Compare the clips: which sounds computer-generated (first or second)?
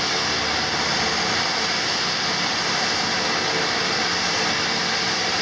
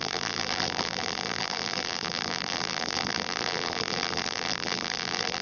second